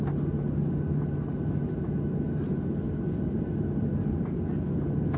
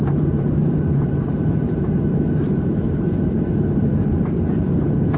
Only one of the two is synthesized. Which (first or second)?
second